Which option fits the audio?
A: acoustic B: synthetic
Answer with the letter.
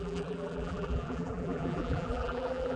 B